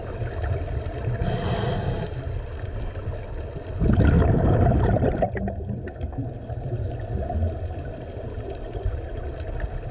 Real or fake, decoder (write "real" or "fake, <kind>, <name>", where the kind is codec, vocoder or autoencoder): real